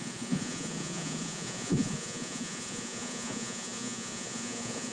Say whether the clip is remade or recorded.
remade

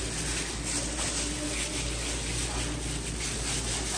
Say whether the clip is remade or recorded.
recorded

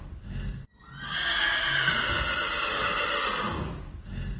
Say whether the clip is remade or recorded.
recorded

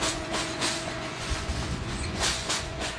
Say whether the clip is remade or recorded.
remade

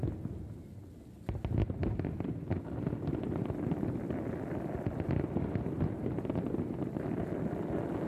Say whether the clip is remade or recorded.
recorded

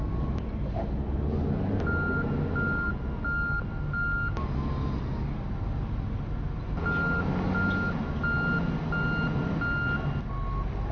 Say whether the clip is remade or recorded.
recorded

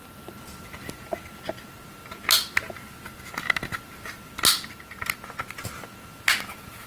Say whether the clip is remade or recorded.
recorded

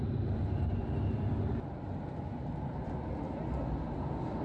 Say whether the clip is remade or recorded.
recorded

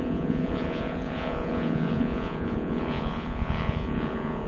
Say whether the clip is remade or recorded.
remade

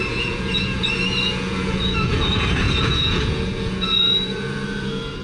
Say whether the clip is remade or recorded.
remade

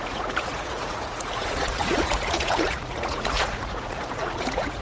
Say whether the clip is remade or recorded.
remade